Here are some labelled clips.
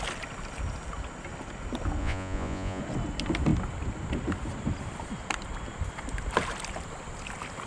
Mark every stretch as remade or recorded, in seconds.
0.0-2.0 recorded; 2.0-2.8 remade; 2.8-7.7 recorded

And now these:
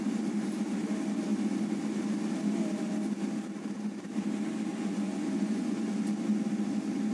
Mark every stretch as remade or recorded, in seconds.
0.0-4.7 recorded; 4.7-5.9 remade; 5.9-7.1 recorded

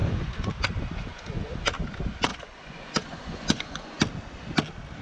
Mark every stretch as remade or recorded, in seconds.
0.0-0.5 remade; 0.5-1.1 recorded; 1.1-1.7 remade; 1.7-2.3 recorded; 2.3-4.0 remade; 4.0-5.0 recorded

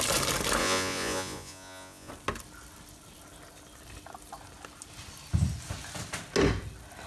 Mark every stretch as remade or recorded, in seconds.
0.0-0.6 recorded; 0.6-2.1 remade; 2.1-7.1 recorded

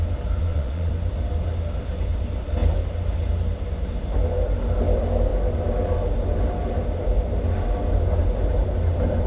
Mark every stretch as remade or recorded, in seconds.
0.0-0.4 recorded; 0.4-0.9 remade; 0.9-9.3 recorded

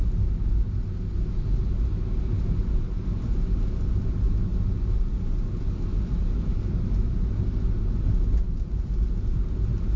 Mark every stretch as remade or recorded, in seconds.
0.0-10.0 recorded

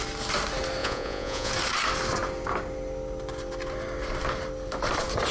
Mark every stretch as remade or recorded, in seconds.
0.0-0.8 recorded; 0.8-1.5 remade; 1.5-5.3 recorded

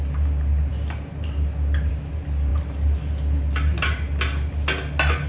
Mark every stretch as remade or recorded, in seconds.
0.0-5.3 recorded